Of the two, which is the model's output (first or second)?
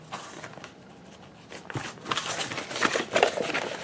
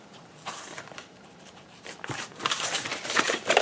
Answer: second